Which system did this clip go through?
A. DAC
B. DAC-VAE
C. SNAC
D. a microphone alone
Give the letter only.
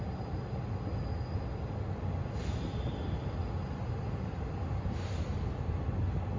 D